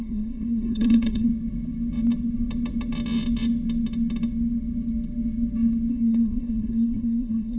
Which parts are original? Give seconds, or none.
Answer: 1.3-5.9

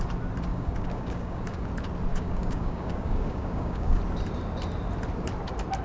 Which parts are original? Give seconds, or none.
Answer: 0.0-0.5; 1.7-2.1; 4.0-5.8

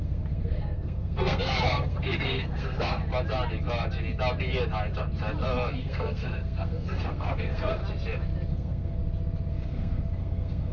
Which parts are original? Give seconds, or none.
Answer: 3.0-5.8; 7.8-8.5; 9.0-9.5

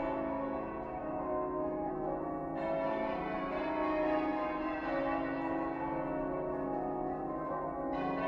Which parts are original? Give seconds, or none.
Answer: 0.0-1.0; 1.9-8.3

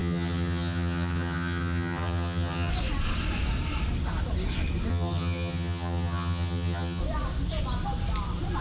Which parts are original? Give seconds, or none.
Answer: 2.7-4.9; 7.0-8.6

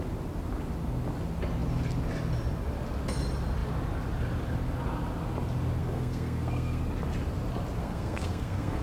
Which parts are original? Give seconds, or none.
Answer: 0.0-5.8; 6.8-7.8

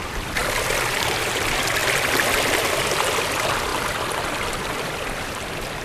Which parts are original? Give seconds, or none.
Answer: 1.8-2.7; 3.7-4.5